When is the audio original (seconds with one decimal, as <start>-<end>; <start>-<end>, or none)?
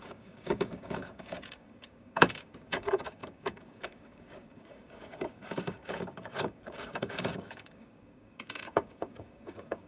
none